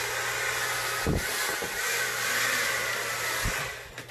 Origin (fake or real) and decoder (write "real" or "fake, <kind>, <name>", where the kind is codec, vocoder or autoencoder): real